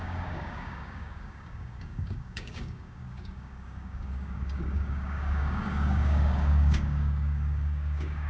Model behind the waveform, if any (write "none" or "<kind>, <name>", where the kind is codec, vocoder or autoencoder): codec, DAC